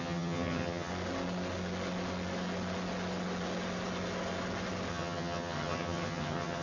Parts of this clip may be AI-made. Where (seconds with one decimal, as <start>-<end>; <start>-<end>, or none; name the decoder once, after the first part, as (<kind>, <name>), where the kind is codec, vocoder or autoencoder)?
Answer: 0.0-0.9 (vocoder, HiFi-GAN); 4.9-6.6